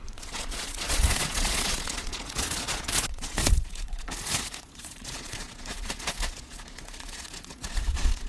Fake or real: fake